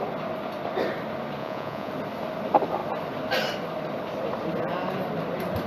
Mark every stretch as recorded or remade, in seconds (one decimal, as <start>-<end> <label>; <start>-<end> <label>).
0.0-1.4 recorded; 1.4-1.9 remade; 1.9-5.7 recorded